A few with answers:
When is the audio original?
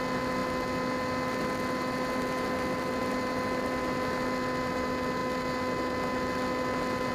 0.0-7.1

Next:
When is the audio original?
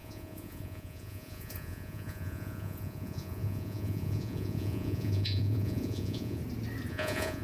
6.4-6.9